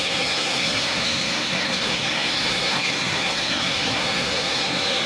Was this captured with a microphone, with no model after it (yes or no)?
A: no